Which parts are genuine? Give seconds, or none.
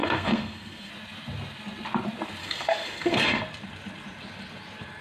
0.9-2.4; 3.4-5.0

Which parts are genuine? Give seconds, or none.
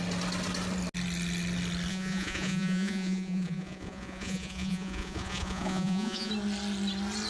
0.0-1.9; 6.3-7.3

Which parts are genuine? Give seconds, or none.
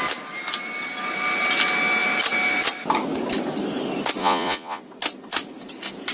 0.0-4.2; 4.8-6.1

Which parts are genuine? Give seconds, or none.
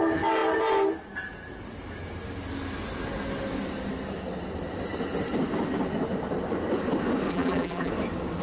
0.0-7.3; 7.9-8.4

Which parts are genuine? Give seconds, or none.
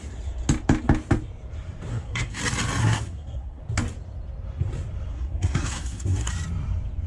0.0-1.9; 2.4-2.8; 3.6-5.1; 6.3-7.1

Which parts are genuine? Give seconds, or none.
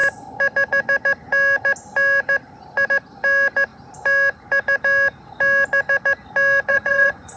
0.0-6.7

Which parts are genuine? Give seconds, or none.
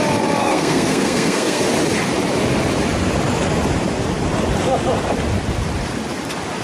0.0-0.4; 1.6-6.6